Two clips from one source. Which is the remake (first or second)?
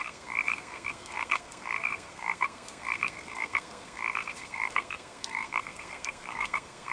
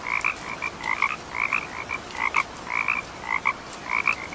first